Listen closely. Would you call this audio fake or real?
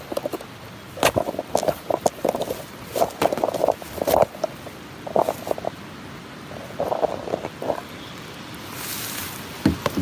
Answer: real